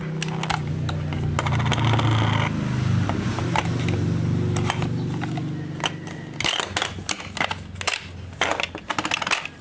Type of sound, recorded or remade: recorded